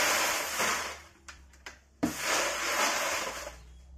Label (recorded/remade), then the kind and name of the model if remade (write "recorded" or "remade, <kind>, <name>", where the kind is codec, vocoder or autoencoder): remade, vocoder, BigVGAN v2